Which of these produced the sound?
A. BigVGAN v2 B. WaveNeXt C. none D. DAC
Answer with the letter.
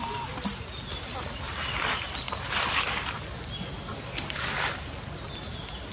C